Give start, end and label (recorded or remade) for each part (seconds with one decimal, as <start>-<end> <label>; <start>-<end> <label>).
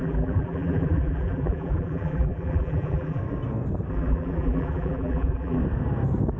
0.0-3.2 remade; 3.2-3.9 recorded; 3.9-5.6 remade; 5.6-6.4 recorded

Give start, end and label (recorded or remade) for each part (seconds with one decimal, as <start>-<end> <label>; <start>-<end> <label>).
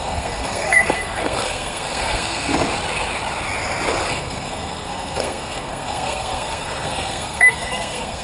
0.0-2.5 remade; 2.5-4.0 recorded; 4.0-8.2 remade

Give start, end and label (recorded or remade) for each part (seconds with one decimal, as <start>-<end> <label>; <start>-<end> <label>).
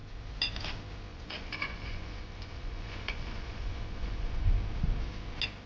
0.0-1.1 recorded; 1.1-4.5 remade; 4.5-5.7 recorded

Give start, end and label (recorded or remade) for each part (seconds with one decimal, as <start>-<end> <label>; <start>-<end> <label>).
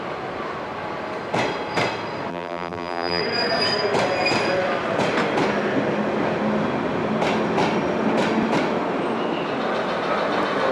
0.0-2.3 recorded; 2.3-3.2 remade; 3.2-10.7 recorded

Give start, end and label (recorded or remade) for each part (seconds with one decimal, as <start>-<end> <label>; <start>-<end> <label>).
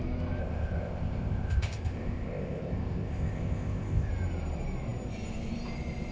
0.0-0.4 recorded; 0.4-4.1 remade; 4.1-6.1 recorded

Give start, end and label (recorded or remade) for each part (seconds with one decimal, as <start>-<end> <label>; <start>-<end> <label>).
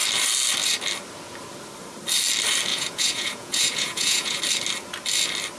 0.0-2.7 recorded; 2.7-4.4 remade; 4.4-5.6 recorded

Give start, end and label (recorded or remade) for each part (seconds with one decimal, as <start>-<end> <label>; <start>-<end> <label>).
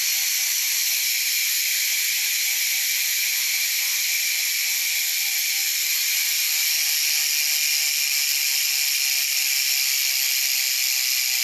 0.0-0.8 recorded; 0.8-1.5 remade; 1.5-2.3 recorded; 2.3-4.0 remade; 4.0-11.4 recorded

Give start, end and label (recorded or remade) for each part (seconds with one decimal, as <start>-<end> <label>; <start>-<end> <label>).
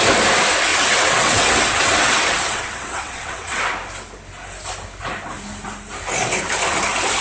0.0-0.7 recorded; 0.7-3.6 remade; 3.6-7.2 recorded